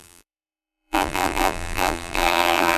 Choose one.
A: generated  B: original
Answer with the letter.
A